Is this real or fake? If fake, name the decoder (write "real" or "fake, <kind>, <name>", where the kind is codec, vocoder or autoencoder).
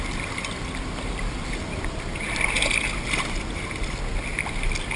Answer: real